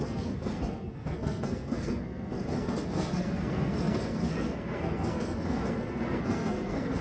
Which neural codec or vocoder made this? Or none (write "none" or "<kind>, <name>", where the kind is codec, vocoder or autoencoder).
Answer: codec, SNAC